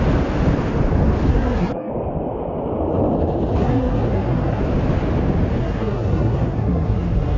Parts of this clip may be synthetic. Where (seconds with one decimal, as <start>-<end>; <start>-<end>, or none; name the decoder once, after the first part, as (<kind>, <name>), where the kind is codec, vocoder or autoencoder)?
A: 1.3-1.9 (codec, SNAC); 3.6-4.6; 5.6-7.4